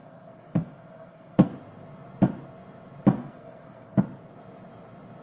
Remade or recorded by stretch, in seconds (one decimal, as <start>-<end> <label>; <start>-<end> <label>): 0.0-1.5 remade; 1.5-3.2 recorded; 3.2-4.0 remade; 4.0-5.2 recorded